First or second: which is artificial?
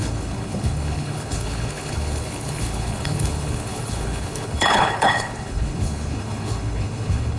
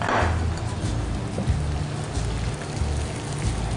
first